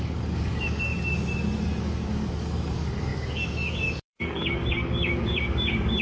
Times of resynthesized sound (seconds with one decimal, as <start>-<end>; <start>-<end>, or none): 0.0-0.9; 1.8-6.0